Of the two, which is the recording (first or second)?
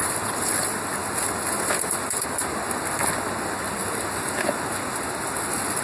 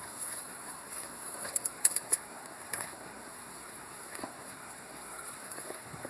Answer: first